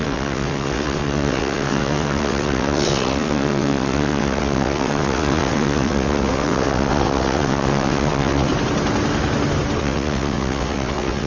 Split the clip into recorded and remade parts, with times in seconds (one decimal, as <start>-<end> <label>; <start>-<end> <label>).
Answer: 0.0-8.5 remade; 8.5-9.8 recorded; 9.8-11.3 remade